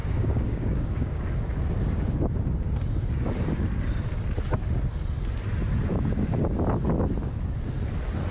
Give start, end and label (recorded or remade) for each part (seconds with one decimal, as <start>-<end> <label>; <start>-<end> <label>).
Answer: 0.0-1.2 remade; 1.2-8.3 recorded